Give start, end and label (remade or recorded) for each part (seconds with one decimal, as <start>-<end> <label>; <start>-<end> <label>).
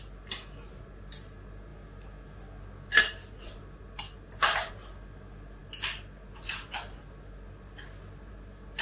0.0-8.8 recorded